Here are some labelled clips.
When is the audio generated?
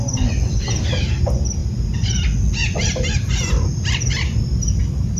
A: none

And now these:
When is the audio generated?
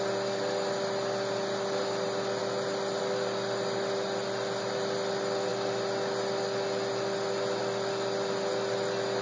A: none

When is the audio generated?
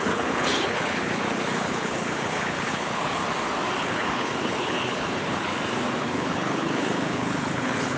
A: 0.0-3.2 (codec, HILCodec); 3.8-5.5; 6.0-8.0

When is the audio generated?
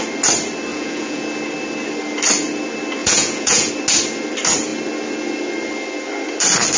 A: 0.7-1.2 (vocoder, Vocos); 3.0-3.7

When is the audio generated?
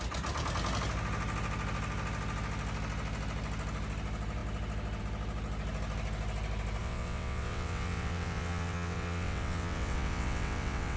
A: 6.8-11.0 (vocoder, WaveNeXt)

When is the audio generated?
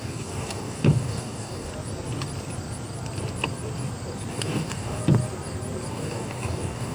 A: 0.0-1.7 (codec, DAC); 4.3-5.0; 5.9-6.9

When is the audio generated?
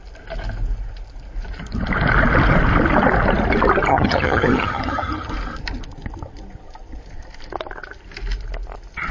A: 3.9-5.3 (vocoder, HiFi-GAN)